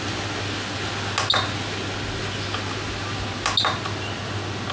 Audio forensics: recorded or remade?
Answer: recorded